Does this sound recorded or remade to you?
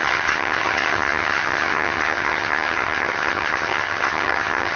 remade